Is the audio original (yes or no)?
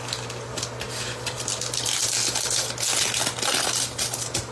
yes